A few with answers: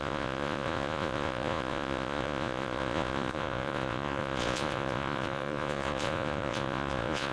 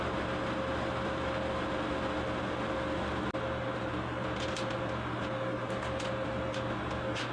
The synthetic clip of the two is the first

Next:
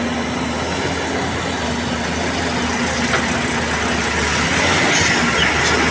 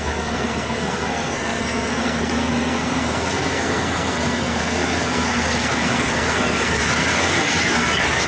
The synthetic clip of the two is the second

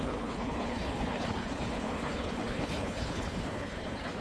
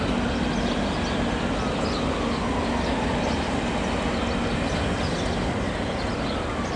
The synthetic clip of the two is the first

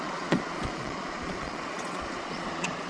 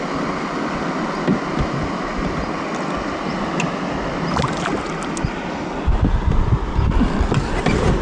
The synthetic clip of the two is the first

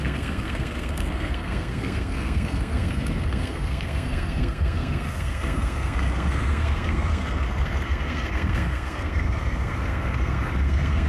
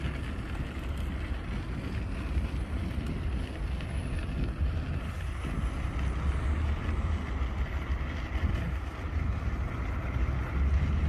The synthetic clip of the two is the first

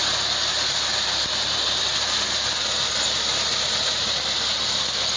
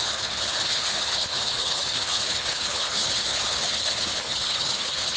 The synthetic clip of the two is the second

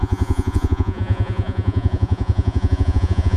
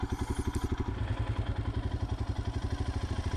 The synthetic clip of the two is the first